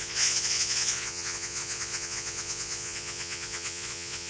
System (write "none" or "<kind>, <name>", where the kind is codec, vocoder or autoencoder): vocoder, Vocos